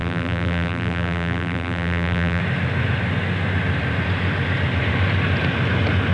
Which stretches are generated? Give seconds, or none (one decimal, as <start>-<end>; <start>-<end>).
0.0-2.4